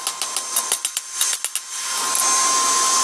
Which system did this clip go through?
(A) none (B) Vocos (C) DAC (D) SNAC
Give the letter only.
A